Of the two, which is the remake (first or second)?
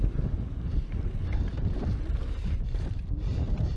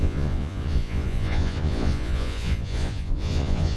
second